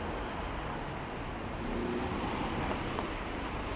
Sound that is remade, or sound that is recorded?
recorded